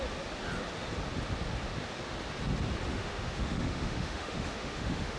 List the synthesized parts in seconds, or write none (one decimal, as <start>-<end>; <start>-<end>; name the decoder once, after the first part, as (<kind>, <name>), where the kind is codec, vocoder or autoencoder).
2.9-5.2 (autoencoder, DAC-VAE)